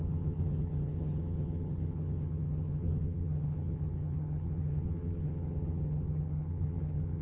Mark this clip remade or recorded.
remade